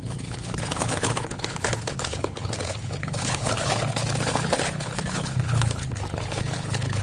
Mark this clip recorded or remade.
remade